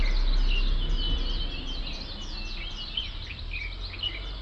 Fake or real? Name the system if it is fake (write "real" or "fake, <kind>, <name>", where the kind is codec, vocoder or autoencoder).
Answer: real